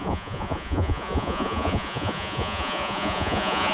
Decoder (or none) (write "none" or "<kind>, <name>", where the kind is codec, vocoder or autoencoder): vocoder, Vocos